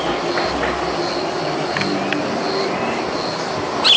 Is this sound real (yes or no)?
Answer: yes